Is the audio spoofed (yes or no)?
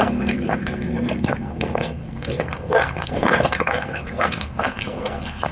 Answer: yes